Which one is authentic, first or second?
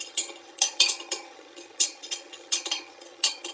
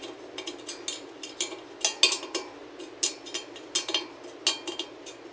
second